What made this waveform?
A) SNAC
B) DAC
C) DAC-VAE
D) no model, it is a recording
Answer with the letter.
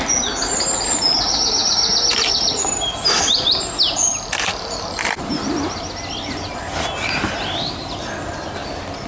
D